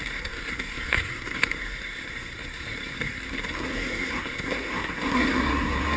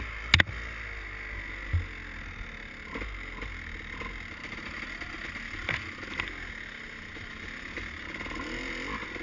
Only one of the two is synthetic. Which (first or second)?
first